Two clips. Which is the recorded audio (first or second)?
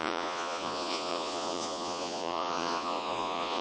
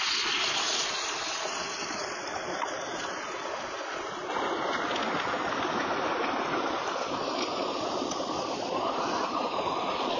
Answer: second